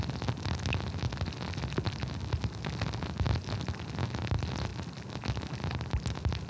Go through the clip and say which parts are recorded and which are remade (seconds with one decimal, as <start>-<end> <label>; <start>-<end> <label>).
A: 0.0-6.5 recorded